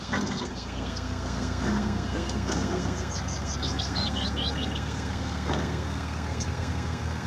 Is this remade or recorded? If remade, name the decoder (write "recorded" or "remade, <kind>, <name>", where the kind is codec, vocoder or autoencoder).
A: remade, codec, SNAC